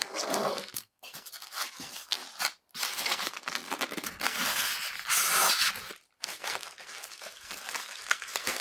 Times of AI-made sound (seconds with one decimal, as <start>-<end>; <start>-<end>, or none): 0.0-2.2; 2.9-4.7; 6.2-8.6